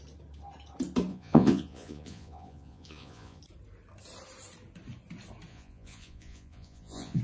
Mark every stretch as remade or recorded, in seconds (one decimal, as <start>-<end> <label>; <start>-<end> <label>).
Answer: 0.0-1.1 recorded; 1.1-3.4 remade; 3.4-5.5 recorded; 5.5-7.2 remade

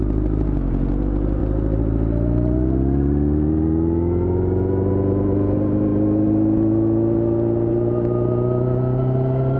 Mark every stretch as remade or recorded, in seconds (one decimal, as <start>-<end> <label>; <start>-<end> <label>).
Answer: 0.0-9.6 recorded

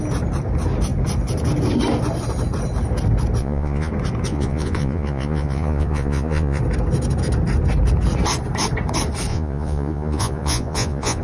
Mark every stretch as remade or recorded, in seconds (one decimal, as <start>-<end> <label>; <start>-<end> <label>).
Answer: 0.0-3.4 recorded; 3.4-3.9 remade; 3.9-4.3 recorded; 4.3-6.6 remade; 6.6-9.3 recorded; 9.3-11.2 remade

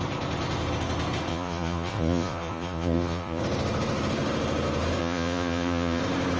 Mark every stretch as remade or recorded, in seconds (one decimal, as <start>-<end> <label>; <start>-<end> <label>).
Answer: 0.0-1.3 recorded; 1.3-3.4 remade; 3.4-5.0 recorded; 5.0-6.0 remade; 6.0-6.4 recorded

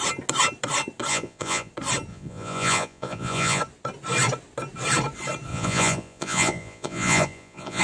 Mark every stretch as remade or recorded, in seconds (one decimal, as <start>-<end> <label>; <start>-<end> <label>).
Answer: 0.0-1.1 recorded; 1.1-1.7 remade; 1.7-2.1 recorded; 2.1-3.6 remade; 3.6-5.5 recorded; 5.5-7.8 remade

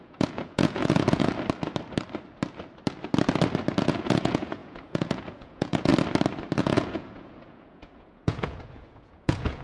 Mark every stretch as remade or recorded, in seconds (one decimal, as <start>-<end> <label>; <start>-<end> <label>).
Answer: 0.0-1.3 remade; 1.3-3.8 recorded; 3.8-5.9 remade; 5.9-6.6 recorded; 6.6-9.6 remade

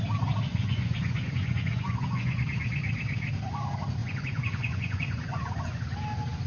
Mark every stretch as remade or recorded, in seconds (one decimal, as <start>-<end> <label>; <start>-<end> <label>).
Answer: 0.0-0.5 recorded; 0.5-2.4 remade; 2.4-4.0 recorded; 4.0-5.8 remade; 5.8-6.5 recorded